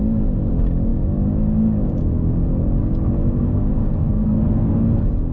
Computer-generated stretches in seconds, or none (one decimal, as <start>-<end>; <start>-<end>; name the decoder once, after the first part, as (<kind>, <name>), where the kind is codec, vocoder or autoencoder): 4.0-4.7 (codec, SNAC)